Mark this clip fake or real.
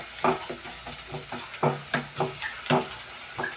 real